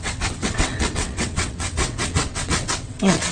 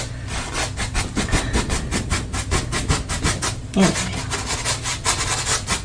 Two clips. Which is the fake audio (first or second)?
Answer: first